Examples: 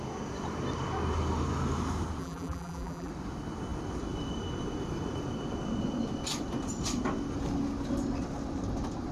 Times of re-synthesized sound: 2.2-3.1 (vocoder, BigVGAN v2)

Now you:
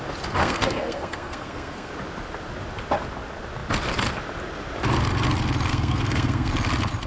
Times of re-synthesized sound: 0.4-1.9 (codec, SNAC); 5.7-6.5

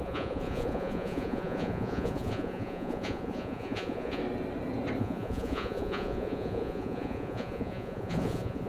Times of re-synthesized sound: 0.0-4.2 (vocoder, Vocos); 5.0-8.7

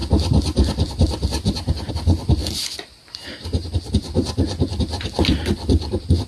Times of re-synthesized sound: none

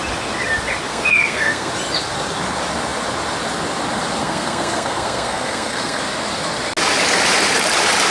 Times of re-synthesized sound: 0.9-1.7 (codec, SNAC); 4.2-6.0

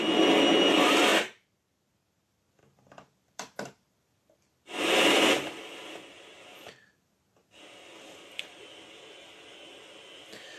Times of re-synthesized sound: 1.1-1.8 (vocoder, BigVGAN v2); 2.6-5.6

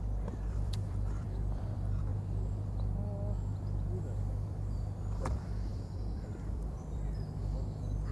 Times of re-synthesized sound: 0.0-2.1 (vocoder, BigVGAN v2); 5.2-7.4

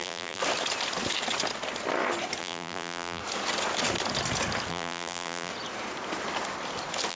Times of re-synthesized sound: 0.0-0.4 (vocoder, BigVGAN v2); 2.4-3.2; 4.7-5.5